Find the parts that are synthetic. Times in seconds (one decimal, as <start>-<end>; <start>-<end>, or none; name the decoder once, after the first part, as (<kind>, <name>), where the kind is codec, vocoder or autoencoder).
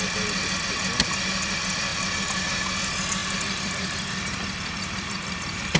1.9-2.7 (vocoder, BigVGAN v2); 3.2-5.8